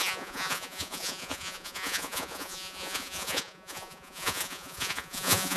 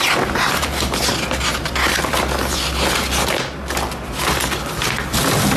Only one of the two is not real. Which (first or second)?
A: first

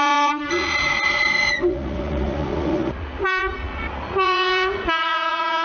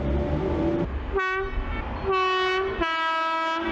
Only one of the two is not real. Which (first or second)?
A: first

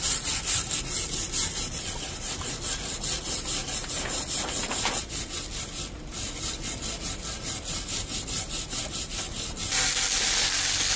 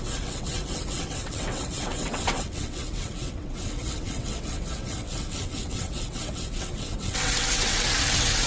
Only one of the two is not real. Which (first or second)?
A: second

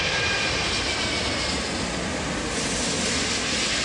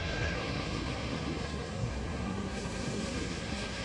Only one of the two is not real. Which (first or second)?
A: second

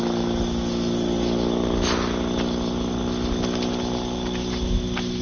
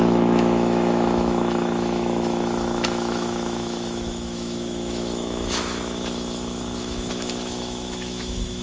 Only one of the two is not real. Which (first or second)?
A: second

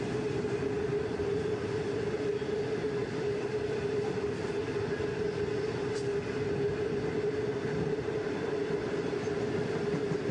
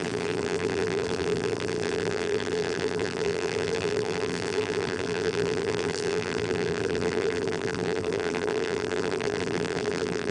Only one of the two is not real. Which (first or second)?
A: second